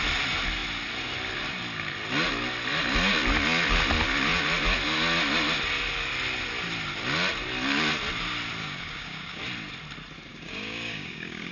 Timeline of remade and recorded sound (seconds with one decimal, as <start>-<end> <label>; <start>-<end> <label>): 0.0-8.6 recorded; 8.6-9.4 remade; 9.4-10.3 recorded; 10.3-11.5 remade